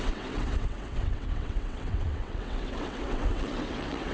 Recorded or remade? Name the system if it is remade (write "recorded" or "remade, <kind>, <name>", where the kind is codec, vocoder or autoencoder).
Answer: remade, vocoder, WaveNeXt